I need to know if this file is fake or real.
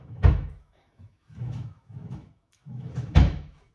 fake